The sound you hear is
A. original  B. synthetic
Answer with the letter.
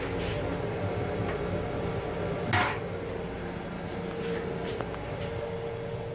A